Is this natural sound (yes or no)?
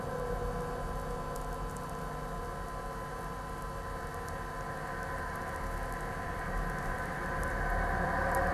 yes